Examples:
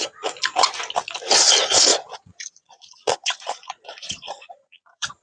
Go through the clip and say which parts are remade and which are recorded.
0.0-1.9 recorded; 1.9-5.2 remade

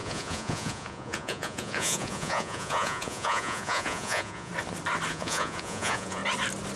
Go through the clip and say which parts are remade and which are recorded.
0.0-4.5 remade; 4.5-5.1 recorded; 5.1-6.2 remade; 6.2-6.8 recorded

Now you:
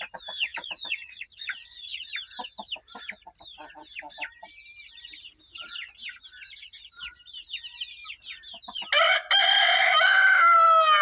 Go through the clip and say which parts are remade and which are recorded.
0.0-0.5 recorded; 0.5-2.1 remade; 2.1-11.0 recorded